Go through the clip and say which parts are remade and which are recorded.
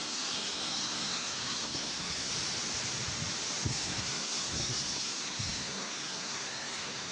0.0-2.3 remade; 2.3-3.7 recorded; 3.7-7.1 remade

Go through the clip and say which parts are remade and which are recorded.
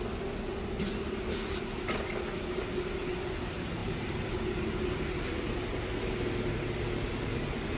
0.0-7.8 recorded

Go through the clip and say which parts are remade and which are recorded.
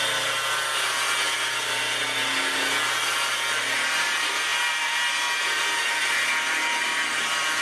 0.0-7.6 recorded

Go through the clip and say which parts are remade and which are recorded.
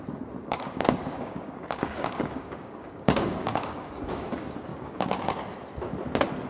0.0-0.4 recorded; 0.4-4.3 remade; 4.3-4.7 recorded; 4.7-5.4 remade; 5.4-6.5 recorded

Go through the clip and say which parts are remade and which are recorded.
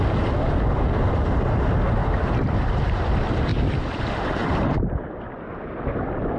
0.0-2.0 recorded; 2.0-3.1 remade; 3.1-6.4 recorded